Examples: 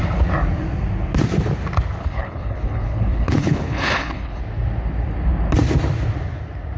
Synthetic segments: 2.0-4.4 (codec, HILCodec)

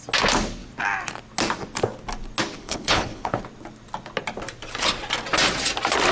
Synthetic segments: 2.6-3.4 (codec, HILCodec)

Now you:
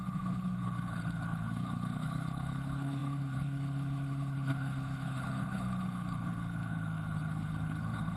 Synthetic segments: 0.0-8.2 (codec, HILCodec)

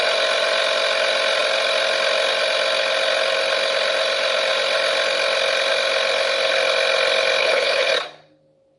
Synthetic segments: 7.4-7.9 (codec, HILCodec)

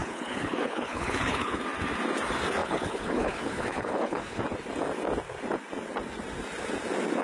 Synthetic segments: 0.0-1.6 (codec, HILCodec); 2.6-4.4

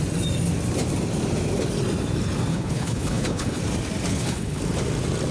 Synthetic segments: 2.5-3.6 (codec, HILCodec); 4.1-4.6

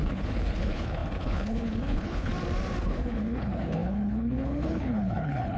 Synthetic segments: 0.0-2.3 (codec, HILCodec); 2.8-5.6